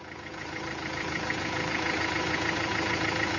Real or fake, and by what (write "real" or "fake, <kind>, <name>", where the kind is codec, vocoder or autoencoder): fake, vocoder, Vocos